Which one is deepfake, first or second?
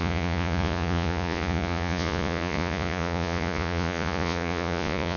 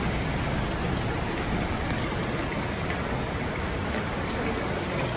first